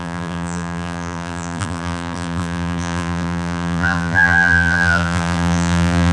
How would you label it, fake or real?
fake